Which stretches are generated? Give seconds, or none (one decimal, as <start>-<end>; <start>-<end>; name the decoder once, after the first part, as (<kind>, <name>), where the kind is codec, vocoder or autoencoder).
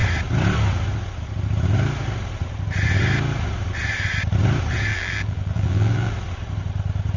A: 4.9-6.1 (vocoder, BigVGAN v2)